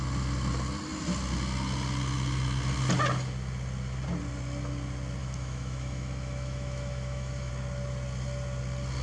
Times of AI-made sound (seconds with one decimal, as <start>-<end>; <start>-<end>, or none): 5.2-7.5

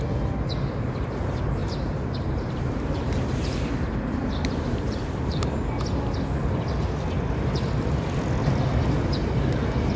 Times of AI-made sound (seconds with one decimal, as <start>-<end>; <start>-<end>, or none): 1.6-5.8

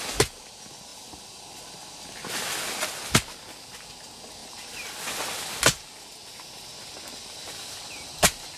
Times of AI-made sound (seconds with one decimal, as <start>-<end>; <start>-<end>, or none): none

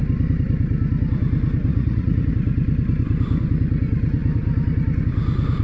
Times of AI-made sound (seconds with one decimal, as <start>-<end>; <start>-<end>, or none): 1.7-2.3

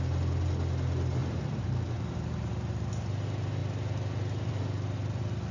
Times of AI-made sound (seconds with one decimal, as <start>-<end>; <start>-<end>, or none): 1.2-2.9